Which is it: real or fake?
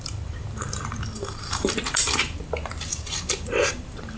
fake